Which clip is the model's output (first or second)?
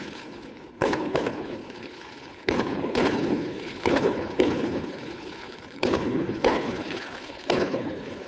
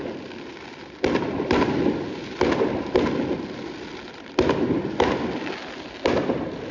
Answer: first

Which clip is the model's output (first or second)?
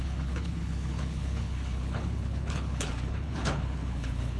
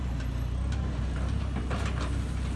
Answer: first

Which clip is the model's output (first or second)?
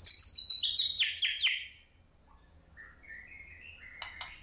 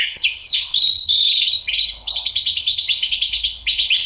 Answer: second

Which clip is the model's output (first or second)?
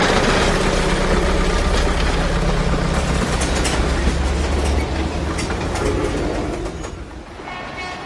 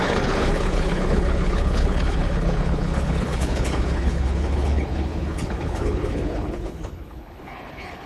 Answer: second